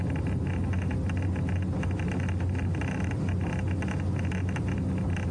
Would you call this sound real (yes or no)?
yes